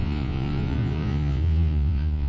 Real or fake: fake